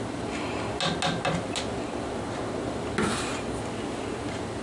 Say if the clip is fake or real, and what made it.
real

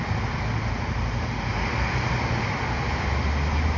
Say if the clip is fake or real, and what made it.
real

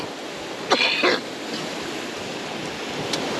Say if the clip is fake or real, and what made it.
real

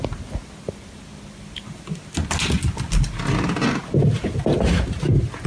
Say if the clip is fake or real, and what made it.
real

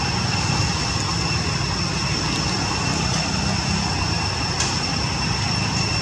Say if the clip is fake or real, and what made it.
real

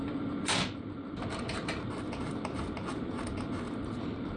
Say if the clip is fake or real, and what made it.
real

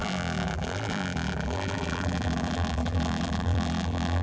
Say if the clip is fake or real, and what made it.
fake, vocoder, BigVGAN v2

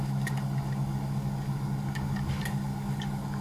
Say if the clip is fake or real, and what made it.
fake, codec, DAC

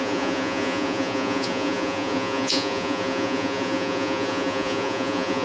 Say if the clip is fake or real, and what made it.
fake, vocoder, Vocos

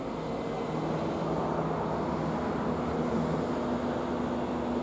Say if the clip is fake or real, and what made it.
real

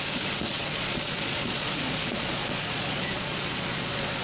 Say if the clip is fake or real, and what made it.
fake, vocoder, Vocos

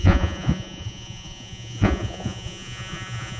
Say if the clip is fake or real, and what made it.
fake, vocoder, Vocos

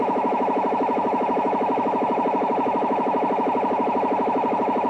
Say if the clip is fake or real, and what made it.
fake, autoencoder, DAC-VAE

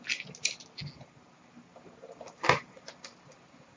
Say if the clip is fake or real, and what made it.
real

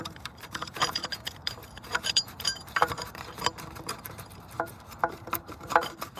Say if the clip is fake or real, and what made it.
fake, vocoder, BigVGAN v2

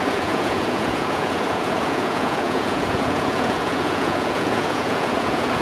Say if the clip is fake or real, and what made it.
fake, vocoder, Vocos